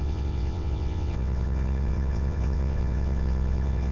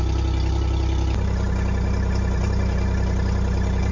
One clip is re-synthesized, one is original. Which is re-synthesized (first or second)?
first